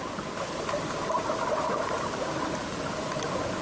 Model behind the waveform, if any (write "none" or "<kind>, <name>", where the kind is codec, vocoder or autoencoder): none